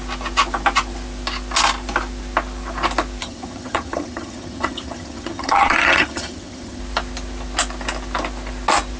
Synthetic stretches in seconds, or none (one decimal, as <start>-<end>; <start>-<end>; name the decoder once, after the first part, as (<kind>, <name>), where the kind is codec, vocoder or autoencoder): 3.2-6.8 (vocoder, HiFi-GAN)